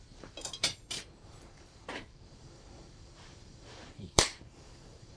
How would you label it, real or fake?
fake